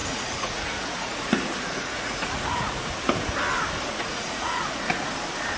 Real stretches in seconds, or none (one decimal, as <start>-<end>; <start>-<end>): 2.9-3.9; 5.1-5.6